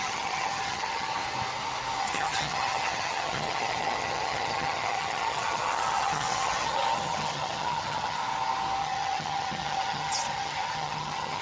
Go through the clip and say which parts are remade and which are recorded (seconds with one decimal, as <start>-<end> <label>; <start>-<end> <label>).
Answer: 0.0-1.2 remade; 1.2-2.0 recorded; 2.0-8.2 remade; 8.2-8.8 recorded; 8.8-11.4 remade

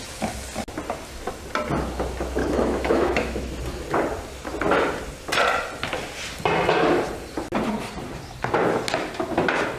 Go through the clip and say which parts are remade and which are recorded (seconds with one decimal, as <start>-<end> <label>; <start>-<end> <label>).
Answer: 0.0-2.4 recorded; 2.4-3.5 remade; 3.5-9.8 recorded